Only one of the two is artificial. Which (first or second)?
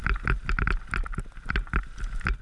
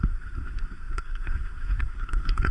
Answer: second